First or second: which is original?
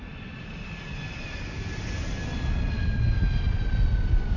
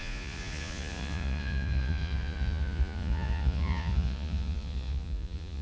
first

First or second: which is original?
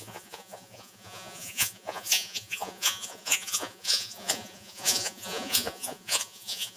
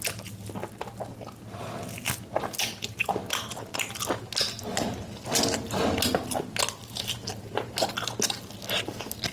second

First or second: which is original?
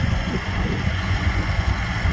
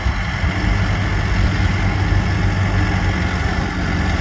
second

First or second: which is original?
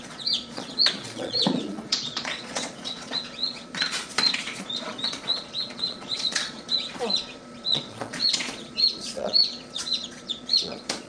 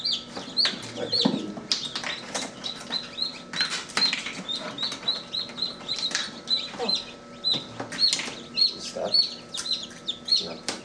second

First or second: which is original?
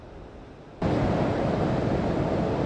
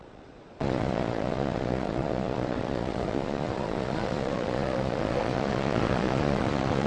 first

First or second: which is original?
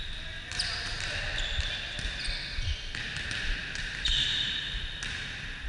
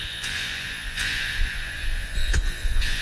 first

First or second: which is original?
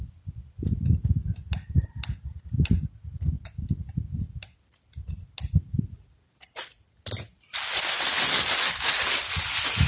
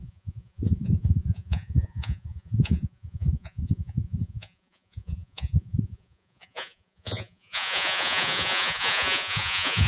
first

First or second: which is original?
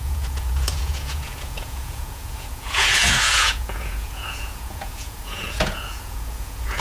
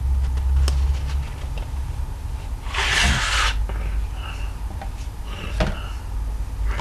second